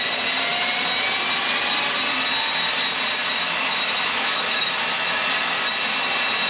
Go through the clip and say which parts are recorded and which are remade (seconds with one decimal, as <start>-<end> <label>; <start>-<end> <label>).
0.0-3.2 recorded; 3.2-5.3 remade; 5.3-6.5 recorded